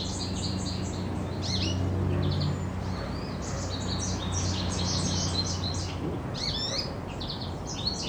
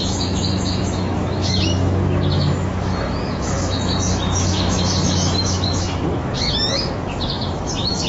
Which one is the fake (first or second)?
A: second